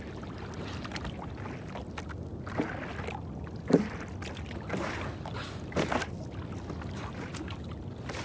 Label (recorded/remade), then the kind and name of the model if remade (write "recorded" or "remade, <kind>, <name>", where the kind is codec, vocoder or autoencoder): recorded